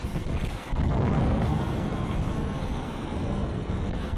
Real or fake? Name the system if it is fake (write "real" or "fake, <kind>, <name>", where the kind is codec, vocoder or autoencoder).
fake, codec, SNAC